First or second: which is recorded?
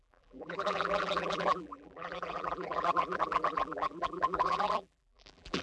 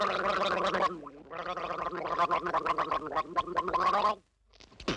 second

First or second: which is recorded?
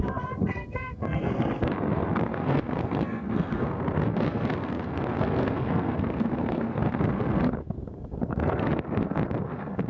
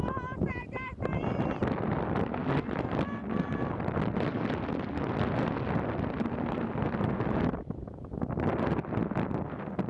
second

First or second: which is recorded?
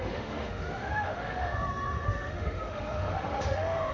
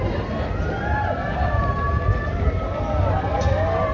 second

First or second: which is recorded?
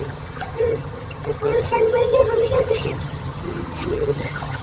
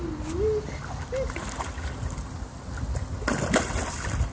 second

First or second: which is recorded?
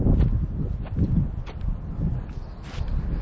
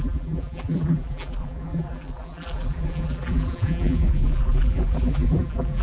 first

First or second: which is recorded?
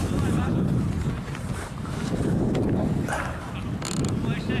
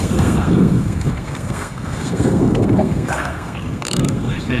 first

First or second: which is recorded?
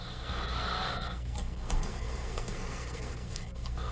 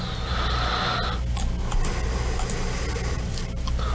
second